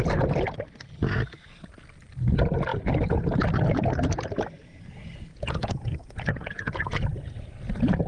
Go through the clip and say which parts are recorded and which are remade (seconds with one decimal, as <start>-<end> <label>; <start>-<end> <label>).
0.0-5.3 recorded; 5.3-7.0 remade; 7.0-8.1 recorded